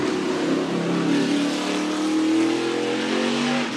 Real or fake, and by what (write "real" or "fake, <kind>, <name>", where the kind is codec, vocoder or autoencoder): real